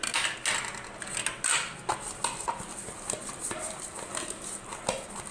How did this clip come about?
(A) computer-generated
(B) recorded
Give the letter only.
B